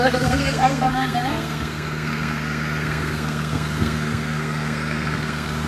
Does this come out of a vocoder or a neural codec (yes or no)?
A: yes